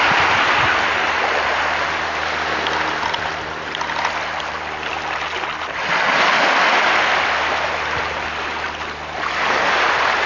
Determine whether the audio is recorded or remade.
recorded